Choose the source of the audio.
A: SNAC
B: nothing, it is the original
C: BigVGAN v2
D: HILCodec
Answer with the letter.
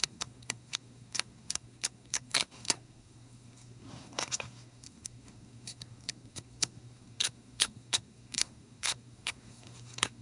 A